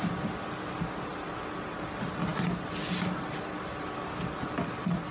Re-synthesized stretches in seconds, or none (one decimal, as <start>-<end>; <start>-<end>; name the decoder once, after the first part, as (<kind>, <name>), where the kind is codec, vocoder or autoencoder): none